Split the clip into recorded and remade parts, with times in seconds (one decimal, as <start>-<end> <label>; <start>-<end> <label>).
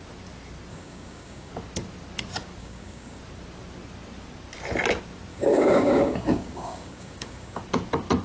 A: 0.0-0.7 recorded; 0.7-1.5 remade; 1.5-2.6 recorded; 2.6-3.2 remade; 3.2-5.3 recorded; 5.3-7.6 remade; 7.6-8.2 recorded